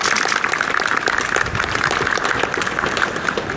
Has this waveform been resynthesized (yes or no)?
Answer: no